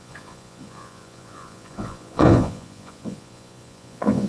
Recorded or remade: remade